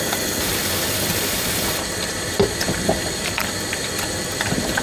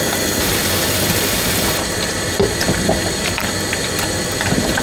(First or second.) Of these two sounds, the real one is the second